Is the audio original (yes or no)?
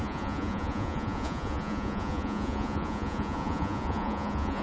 no